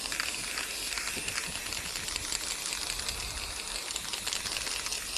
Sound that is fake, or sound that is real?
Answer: real